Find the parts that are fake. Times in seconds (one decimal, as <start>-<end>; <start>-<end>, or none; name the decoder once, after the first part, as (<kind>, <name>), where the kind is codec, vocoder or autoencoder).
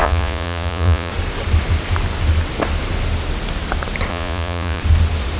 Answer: 0.0-1.1 (vocoder, Vocos); 4.1-4.8